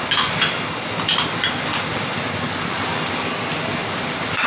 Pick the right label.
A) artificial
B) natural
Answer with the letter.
B